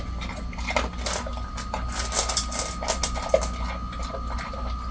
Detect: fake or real real